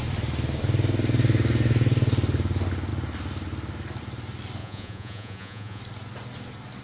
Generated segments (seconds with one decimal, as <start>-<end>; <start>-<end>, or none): 4.6-5.8